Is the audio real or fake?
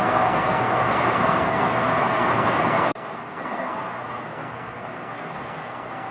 fake